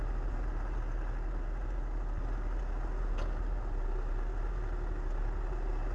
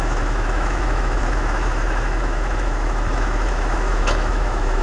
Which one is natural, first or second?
first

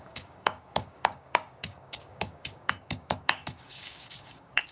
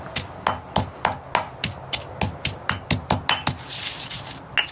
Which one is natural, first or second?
second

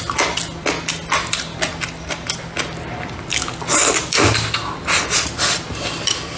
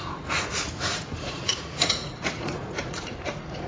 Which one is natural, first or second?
first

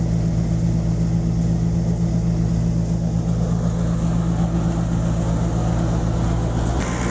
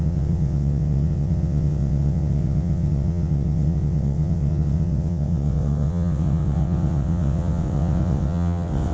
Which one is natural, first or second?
first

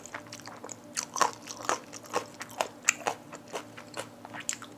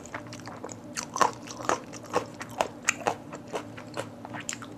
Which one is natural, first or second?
first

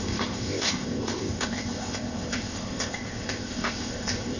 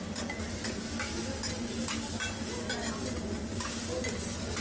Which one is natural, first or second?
second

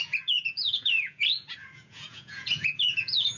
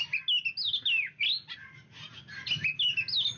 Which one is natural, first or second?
second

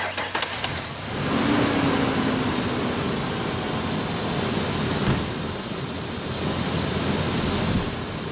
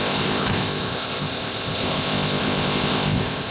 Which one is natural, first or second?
first